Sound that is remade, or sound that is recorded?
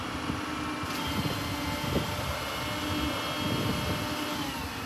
recorded